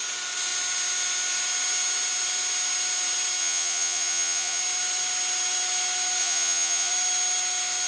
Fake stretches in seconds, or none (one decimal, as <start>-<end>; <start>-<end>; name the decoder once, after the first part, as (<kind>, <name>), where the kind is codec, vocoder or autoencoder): 3.4-4.6 (vocoder, Vocos); 6.2-6.9